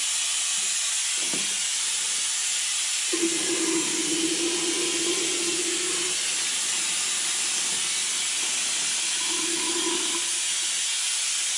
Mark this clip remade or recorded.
recorded